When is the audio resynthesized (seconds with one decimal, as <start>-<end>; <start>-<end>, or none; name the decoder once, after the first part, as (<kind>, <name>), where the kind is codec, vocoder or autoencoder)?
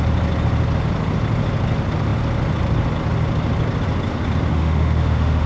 4.5-5.5 (autoencoder, DAC-VAE)